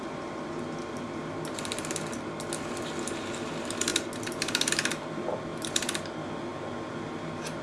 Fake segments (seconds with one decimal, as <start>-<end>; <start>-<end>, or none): none